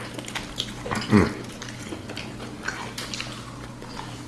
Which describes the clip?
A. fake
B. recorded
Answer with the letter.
B